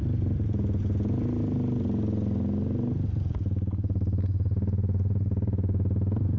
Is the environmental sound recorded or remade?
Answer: recorded